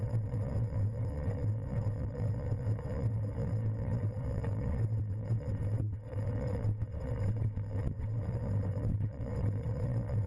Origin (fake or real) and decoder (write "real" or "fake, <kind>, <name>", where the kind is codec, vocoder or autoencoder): fake, vocoder, WaveNeXt